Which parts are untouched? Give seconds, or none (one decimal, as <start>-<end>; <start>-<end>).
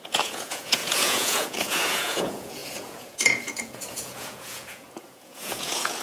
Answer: none